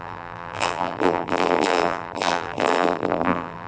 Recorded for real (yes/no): no